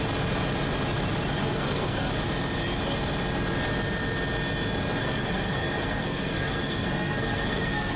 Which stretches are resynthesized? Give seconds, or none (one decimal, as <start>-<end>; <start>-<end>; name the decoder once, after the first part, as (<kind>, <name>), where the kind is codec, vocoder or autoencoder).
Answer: 1.4-2.1 (codec, SNAC); 5.0-8.0